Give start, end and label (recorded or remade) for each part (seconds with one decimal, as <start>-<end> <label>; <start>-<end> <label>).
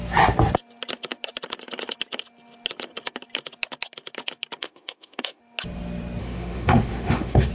0.0-4.6 recorded; 4.6-5.4 remade; 5.4-6.2 recorded; 6.2-7.5 remade